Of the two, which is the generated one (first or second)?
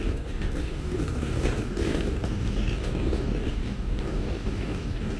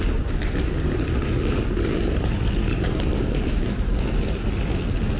first